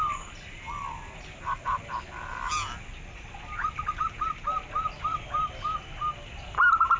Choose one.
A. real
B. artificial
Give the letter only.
A